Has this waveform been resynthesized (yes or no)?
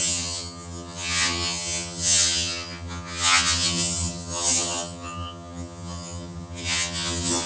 yes